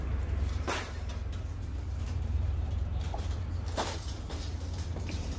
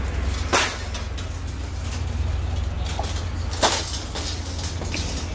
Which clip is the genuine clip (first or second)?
second